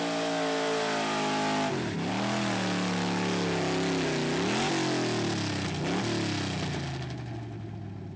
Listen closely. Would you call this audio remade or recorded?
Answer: recorded